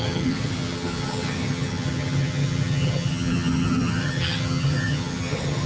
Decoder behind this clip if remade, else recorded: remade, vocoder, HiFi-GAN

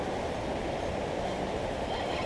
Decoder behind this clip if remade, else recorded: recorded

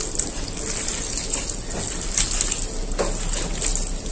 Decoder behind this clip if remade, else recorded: recorded